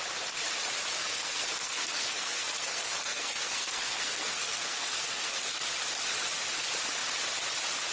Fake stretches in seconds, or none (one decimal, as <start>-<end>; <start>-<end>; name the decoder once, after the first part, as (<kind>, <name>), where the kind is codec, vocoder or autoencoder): 1.0-5.6 (codec, SNAC)